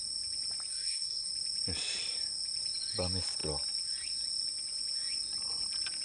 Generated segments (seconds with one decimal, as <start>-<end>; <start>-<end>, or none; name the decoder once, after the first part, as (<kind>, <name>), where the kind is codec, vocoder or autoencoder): 0.7-1.3 (codec, SNAC)

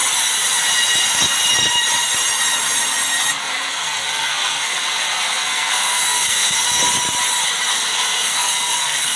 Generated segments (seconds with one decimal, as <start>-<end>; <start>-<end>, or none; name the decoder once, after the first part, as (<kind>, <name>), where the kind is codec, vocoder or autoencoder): 3.4-6.8 (codec, SNAC); 7.7-9.2

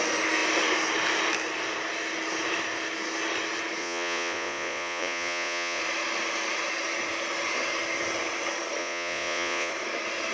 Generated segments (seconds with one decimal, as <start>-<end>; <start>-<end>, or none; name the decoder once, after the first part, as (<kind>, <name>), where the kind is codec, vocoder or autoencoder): 3.8-5.8 (vocoder, Vocos); 8.8-9.7

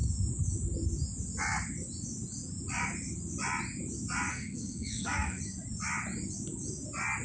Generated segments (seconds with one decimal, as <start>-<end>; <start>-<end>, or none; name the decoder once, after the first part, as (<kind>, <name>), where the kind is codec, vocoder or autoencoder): 4.3-5.4 (codec, SNAC)

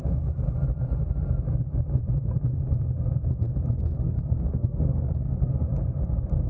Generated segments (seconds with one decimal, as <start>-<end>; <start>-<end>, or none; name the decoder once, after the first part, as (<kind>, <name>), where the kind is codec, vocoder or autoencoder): 3.8-5.5 (codec, SNAC)

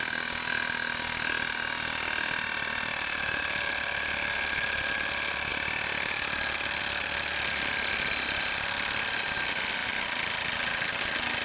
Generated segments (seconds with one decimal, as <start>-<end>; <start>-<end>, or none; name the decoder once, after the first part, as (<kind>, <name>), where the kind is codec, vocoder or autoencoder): 5.5-6.8 (vocoder, BigVGAN v2); 9.8-11.4

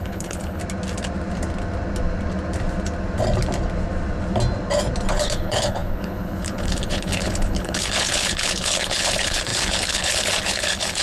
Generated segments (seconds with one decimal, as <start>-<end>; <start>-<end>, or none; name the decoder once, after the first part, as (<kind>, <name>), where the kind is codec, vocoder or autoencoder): 0.0-0.6 (codec, HILCodec); 5.1-11.0